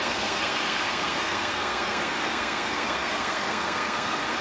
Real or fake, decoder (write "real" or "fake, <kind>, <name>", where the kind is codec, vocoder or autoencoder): fake, codec, SNAC